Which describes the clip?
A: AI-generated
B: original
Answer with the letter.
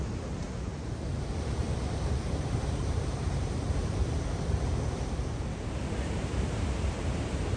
A